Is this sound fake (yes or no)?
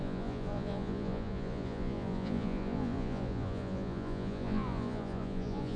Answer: yes